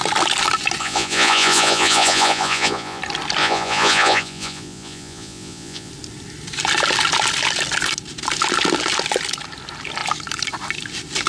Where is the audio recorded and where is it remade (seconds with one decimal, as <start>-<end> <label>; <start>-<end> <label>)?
0.0-0.8 recorded; 0.8-3.0 remade; 3.0-3.4 recorded; 3.4-5.9 remade; 5.9-11.3 recorded